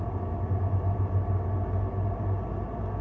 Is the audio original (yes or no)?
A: yes